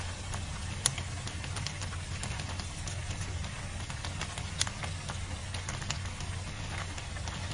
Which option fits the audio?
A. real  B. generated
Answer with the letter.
A